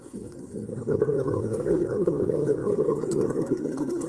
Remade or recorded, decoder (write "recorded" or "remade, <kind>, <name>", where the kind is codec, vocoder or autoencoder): remade, codec, SNAC